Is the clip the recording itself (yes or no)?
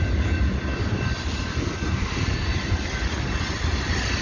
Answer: yes